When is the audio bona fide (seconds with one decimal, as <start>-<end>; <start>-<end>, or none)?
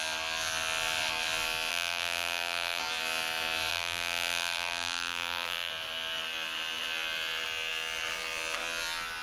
0.0-1.7; 2.8-3.7; 5.7-9.2